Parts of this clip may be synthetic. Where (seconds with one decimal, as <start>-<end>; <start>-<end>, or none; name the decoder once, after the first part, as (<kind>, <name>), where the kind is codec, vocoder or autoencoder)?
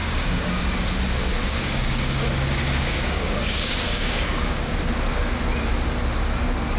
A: 0.0-0.6 (codec, DAC); 1.4-4.7